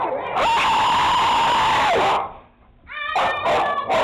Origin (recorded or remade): recorded